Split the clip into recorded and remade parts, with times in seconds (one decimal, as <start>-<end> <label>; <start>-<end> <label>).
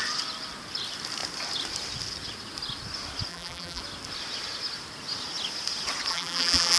0.0-3.3 recorded; 3.3-3.8 remade; 3.8-6.1 recorded; 6.1-6.8 remade